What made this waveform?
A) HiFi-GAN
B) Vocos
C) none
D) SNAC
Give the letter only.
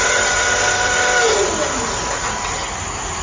C